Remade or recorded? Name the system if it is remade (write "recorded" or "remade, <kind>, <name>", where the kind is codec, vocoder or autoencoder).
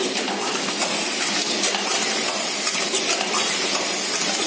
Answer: recorded